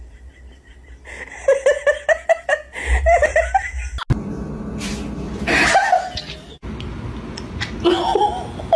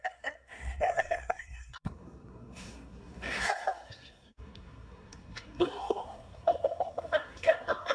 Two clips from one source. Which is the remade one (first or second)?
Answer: second